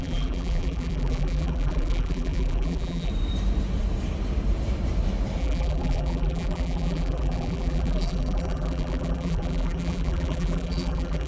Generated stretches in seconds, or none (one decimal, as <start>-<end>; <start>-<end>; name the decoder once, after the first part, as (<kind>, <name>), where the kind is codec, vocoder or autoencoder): 0.0-3.1 (vocoder, BigVGAN v2); 5.4-11.3